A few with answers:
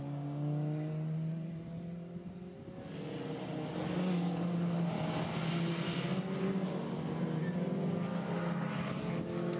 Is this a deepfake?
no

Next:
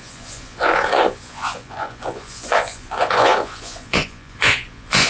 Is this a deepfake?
yes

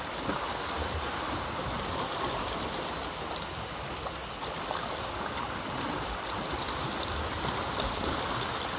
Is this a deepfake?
no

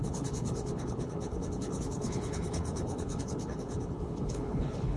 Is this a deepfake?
yes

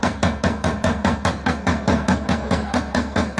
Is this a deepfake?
yes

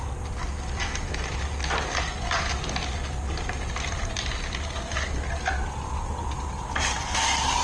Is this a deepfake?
no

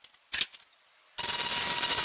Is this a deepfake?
no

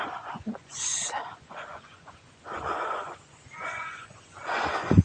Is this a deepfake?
yes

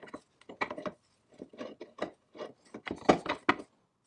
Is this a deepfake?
no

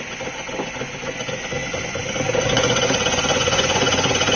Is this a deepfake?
yes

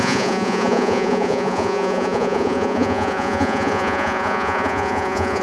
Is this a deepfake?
yes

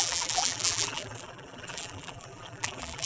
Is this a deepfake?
yes